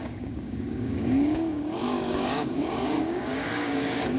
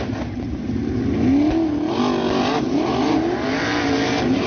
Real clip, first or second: second